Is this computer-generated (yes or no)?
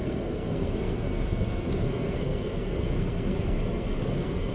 yes